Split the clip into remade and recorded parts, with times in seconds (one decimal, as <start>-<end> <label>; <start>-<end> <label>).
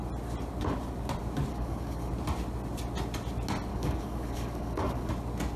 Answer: 0.0-1.5 recorded; 1.5-2.1 remade; 2.1-3.7 recorded; 3.7-5.1 remade; 5.1-5.6 recorded